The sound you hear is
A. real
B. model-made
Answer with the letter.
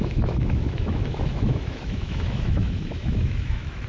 B